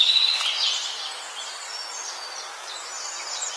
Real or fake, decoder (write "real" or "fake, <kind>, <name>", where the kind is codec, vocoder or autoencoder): real